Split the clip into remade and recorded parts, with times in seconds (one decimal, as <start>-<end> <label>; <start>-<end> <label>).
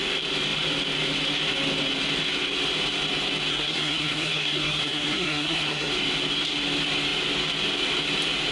0.0-3.5 recorded; 3.5-5.9 remade; 5.9-8.5 recorded